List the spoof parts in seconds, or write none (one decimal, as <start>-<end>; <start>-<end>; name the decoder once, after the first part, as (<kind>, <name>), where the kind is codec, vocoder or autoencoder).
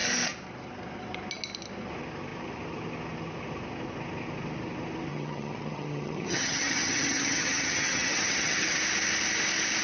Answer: 5.1-8.8 (vocoder, HiFi-GAN)